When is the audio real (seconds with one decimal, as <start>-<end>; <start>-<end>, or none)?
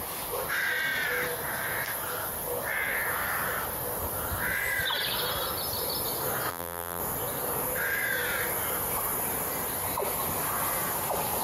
0.0-6.5; 7.0-11.4